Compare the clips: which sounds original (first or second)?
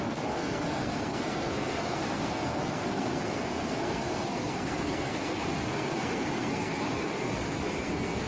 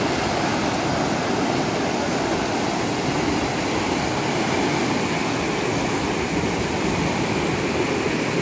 second